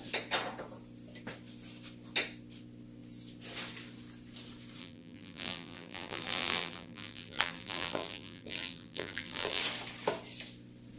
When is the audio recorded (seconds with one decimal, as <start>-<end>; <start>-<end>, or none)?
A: 0.0-4.8; 9.6-11.0